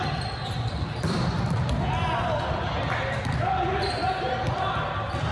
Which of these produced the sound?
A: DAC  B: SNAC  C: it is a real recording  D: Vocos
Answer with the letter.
C